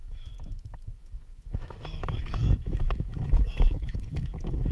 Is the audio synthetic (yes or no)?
yes